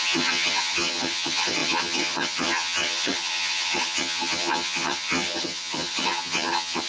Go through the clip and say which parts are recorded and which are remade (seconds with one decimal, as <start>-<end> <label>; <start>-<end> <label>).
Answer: 0.0-6.9 remade